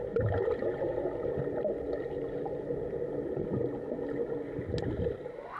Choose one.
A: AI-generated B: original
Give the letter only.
B